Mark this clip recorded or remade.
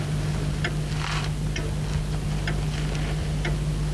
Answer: recorded